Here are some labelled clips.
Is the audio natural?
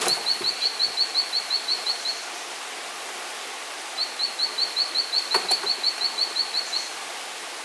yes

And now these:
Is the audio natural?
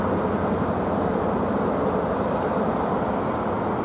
yes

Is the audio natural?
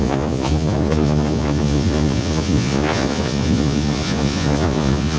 no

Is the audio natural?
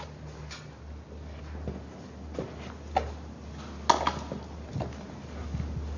yes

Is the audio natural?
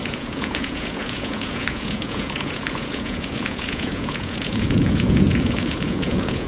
no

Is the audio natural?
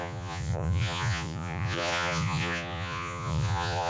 no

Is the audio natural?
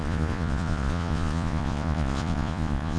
no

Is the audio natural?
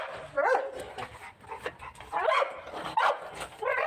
yes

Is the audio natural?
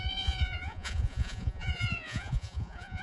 no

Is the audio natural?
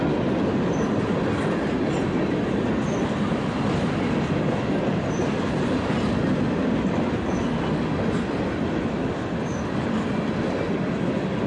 yes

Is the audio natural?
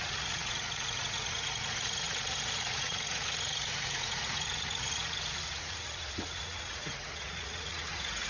no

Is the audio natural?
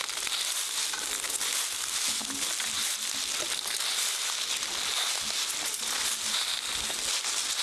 yes